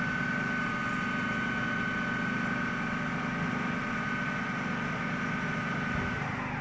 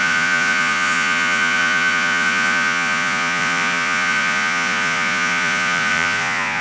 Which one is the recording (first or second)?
first